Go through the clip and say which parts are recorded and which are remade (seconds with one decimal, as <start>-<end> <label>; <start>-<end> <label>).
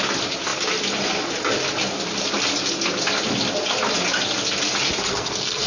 0.0-5.1 recorded; 5.1-5.7 remade